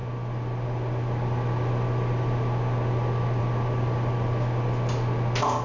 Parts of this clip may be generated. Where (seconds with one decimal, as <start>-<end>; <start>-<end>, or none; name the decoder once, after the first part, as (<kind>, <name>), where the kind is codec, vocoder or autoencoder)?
none